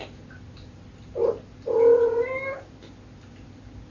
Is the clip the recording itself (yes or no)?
yes